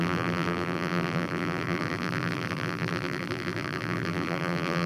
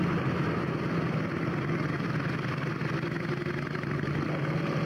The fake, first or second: first